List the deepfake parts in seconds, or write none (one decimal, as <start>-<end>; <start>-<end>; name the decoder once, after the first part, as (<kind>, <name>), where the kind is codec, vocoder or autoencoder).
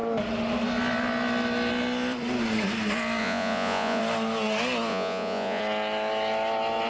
3.2-4.0 (vocoder, Vocos); 4.9-5.6